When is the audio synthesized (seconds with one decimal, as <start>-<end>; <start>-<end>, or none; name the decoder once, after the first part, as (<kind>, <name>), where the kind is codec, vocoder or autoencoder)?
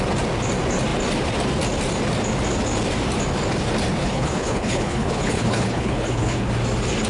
4.0-6.5 (codec, HILCodec)